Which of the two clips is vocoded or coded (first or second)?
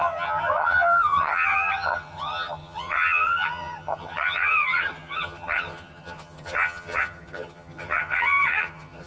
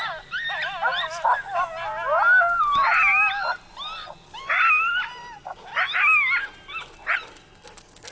first